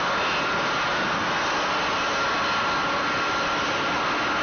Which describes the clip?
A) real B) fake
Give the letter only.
A